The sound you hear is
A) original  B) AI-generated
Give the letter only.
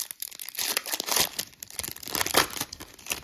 A